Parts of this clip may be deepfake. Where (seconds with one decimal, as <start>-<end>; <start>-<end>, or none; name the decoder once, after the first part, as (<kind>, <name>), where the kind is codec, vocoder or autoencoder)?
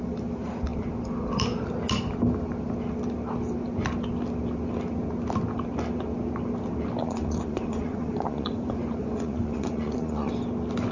7.0-10.3 (vocoder, Vocos)